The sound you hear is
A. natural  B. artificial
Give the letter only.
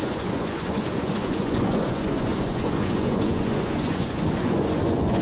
B